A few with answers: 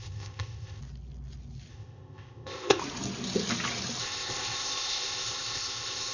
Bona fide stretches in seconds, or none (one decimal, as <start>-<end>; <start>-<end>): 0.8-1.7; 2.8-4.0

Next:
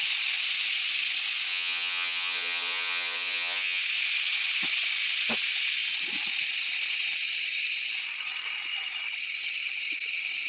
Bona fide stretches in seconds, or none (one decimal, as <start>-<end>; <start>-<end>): 0.0-1.5; 3.8-10.5

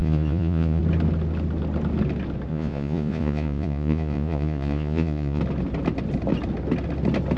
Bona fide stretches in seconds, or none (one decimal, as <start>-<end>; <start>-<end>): 0.8-2.5; 5.4-7.4

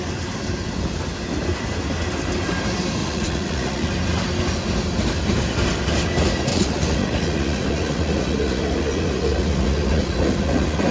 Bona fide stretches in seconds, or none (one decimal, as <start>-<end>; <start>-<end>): 0.0-3.0; 3.9-6.5

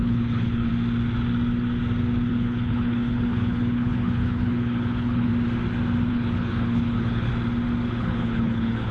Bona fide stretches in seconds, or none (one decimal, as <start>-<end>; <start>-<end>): 0.7-2.3; 5.3-6.1; 7.3-7.9

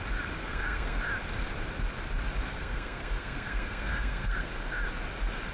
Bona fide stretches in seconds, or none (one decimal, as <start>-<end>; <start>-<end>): 0.0-0.4; 1.0-2.5; 4.5-5.5

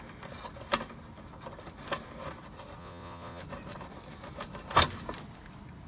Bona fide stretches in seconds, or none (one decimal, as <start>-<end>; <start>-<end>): 0.0-2.8; 3.4-5.9

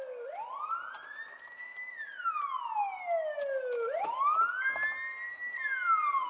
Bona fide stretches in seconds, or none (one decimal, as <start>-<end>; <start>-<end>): 0.0-6.3